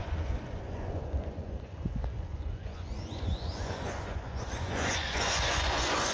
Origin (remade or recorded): remade